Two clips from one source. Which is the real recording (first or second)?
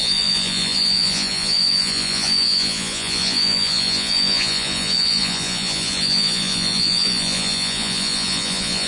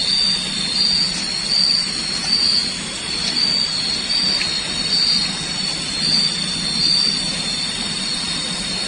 second